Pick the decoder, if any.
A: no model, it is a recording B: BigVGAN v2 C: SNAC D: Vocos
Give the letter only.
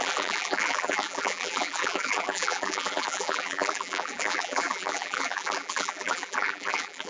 B